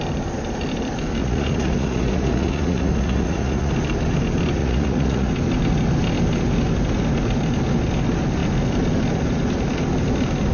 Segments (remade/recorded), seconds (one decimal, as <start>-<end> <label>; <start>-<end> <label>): 0.0-1.2 recorded; 1.2-3.7 remade; 3.7-4.6 recorded; 4.6-5.3 remade; 5.3-10.5 recorded